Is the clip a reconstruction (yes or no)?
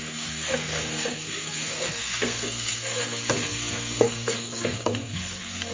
yes